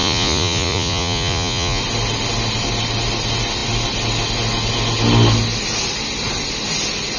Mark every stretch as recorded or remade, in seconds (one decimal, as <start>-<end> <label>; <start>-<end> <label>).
0.0-1.8 remade; 1.8-7.2 recorded